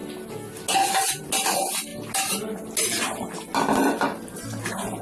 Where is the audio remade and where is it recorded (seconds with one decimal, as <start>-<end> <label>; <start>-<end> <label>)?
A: 0.0-5.0 recorded